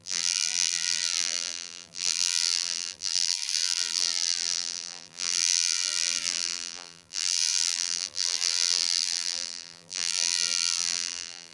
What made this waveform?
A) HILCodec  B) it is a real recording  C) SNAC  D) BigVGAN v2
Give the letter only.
D